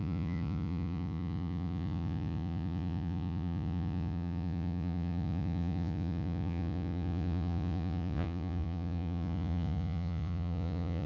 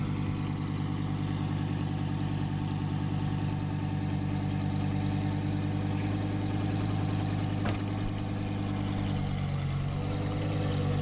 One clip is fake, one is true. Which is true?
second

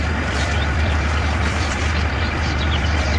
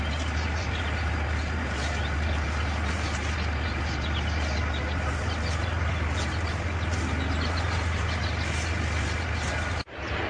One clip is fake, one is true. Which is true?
second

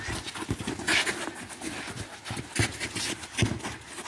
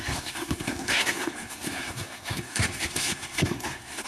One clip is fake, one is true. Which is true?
first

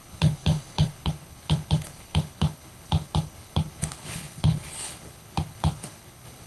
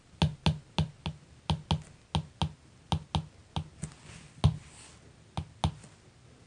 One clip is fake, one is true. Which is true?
second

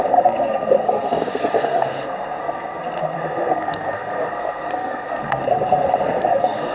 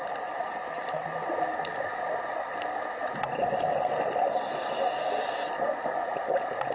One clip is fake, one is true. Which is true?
second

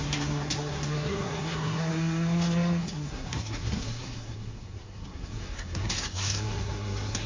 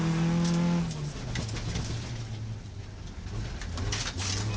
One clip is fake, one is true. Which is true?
second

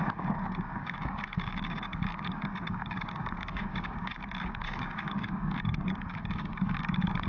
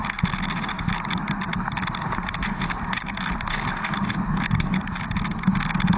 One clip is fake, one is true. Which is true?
second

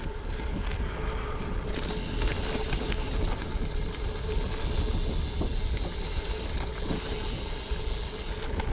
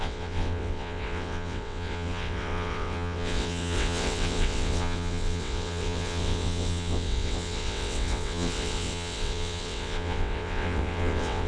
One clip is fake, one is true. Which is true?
first